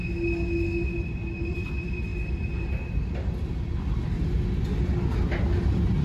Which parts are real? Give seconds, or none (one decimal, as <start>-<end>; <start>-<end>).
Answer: 0.0-6.0